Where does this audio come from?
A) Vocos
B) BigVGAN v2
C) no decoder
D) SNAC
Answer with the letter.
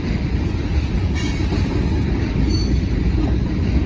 C